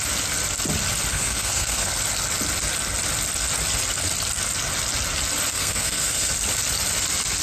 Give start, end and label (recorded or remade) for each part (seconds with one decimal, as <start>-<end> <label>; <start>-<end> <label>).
0.0-1.1 recorded; 1.1-1.9 remade; 1.9-5.5 recorded; 5.5-6.3 remade; 6.3-7.4 recorded